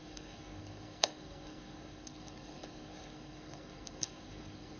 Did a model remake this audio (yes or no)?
yes